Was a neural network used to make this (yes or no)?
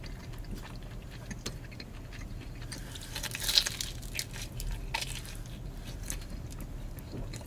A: no